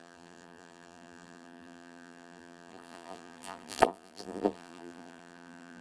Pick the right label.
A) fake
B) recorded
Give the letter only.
A